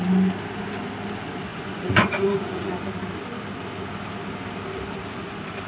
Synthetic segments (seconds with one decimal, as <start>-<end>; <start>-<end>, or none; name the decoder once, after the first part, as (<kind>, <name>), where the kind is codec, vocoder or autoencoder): 1.5-2.8 (vocoder, Vocos)